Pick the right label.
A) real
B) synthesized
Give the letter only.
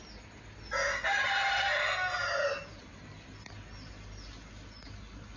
A